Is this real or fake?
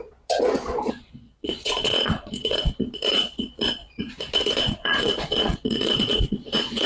fake